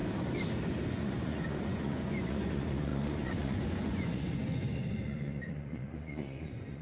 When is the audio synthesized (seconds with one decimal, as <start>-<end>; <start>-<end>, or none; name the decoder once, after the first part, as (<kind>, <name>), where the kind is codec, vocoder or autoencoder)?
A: 0.9-6.8 (vocoder, Vocos)